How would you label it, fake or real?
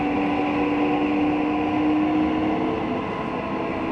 real